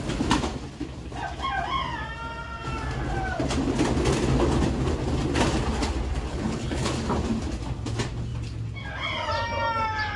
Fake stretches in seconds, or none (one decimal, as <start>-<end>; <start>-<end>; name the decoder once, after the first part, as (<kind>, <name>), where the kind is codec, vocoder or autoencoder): 6.3-6.9 (codec, HILCodec)